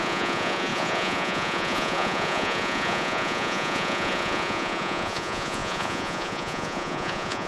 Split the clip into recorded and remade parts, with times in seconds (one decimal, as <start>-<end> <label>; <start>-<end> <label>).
0.0-7.5 remade